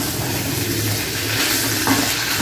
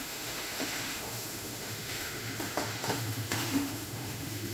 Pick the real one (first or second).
first